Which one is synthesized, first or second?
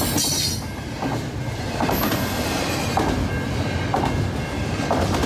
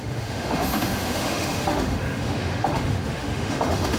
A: second